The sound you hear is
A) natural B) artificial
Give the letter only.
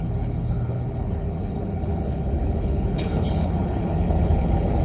B